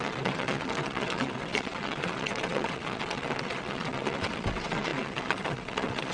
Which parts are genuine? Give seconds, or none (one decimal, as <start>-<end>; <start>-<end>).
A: none